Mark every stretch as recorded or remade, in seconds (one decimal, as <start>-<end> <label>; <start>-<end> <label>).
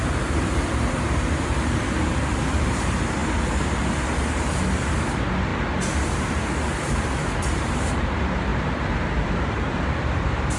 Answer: 0.0-5.5 remade; 5.5-6.1 recorded; 6.1-10.6 remade